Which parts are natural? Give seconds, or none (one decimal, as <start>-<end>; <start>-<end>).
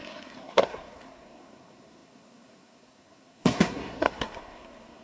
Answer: none